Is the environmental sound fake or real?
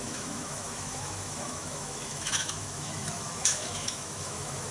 fake